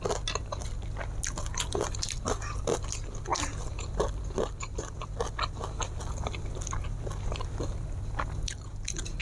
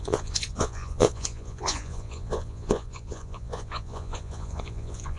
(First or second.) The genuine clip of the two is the first